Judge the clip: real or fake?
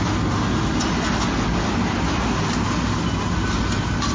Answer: real